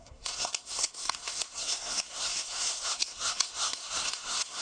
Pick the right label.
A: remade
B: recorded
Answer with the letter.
A